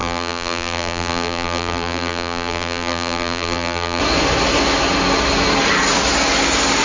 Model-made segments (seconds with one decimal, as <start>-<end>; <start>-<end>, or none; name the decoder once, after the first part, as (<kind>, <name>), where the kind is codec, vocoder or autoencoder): 0.0-4.0 (vocoder, BigVGAN v2)